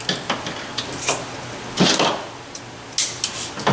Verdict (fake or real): real